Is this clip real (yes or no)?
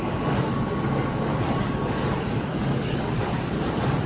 no